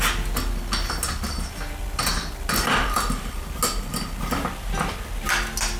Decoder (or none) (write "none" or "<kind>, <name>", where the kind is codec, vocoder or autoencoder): none